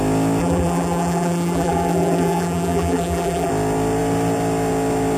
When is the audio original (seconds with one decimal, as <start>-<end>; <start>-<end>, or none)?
0.0-0.4; 3.5-5.2